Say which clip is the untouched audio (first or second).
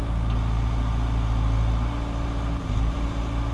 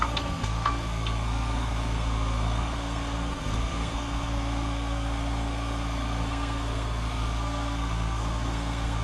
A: first